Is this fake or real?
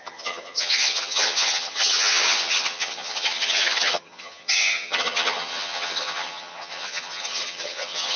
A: fake